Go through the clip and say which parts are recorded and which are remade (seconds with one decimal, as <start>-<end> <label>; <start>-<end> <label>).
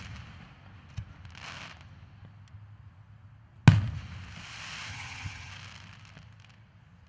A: 0.0-4.9 recorded; 4.9-5.5 remade; 5.5-7.1 recorded